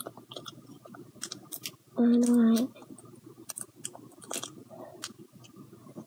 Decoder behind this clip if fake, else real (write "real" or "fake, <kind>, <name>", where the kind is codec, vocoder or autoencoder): real